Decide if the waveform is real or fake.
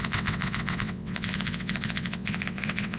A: fake